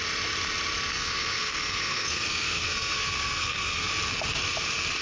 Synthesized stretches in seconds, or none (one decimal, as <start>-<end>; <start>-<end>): 0.9-3.9